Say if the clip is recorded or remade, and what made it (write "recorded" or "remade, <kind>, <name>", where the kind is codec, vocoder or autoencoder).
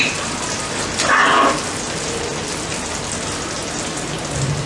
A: recorded